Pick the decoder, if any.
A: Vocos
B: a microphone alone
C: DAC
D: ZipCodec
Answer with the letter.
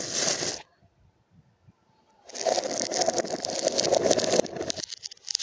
B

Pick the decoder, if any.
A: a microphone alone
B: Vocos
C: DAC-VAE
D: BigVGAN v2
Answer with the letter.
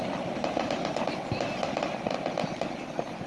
A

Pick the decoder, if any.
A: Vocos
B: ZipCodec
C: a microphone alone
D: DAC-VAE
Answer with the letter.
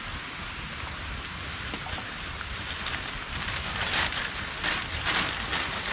C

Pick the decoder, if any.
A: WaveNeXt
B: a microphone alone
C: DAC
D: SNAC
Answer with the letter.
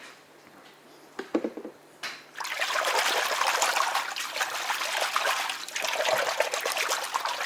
B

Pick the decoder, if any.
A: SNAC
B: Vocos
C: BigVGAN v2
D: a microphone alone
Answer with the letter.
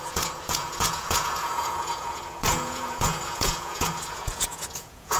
B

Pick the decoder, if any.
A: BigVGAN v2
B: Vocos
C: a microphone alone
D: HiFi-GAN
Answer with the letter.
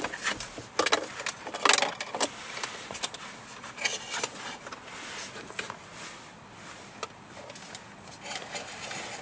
C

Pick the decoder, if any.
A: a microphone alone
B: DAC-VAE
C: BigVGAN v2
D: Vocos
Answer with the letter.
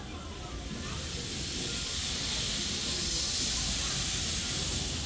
A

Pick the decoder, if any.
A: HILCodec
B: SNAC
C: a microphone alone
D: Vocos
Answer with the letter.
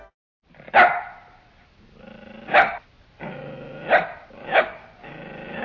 C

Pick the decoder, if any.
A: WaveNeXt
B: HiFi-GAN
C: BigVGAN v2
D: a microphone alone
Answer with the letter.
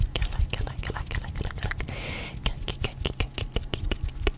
D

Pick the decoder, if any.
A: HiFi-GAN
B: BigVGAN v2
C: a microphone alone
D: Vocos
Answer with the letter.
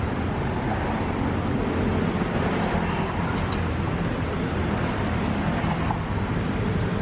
C